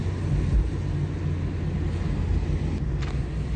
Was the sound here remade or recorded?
recorded